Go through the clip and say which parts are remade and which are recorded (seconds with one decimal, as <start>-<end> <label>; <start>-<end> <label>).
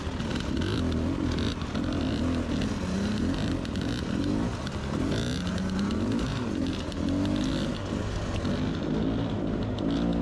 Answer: 0.0-10.2 recorded